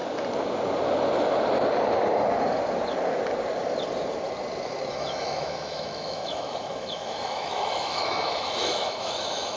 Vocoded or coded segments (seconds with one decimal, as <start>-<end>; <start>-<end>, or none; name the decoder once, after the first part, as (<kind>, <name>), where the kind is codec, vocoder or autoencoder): 4.9-9.6 (autoencoder, DAC-VAE)